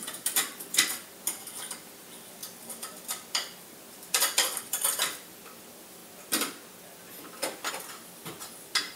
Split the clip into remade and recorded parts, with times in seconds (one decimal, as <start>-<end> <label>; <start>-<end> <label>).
0.0-6.0 remade; 6.0-7.7 recorded; 7.7-9.0 remade